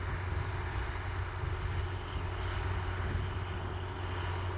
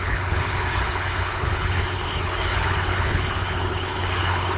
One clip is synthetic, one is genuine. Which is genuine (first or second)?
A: first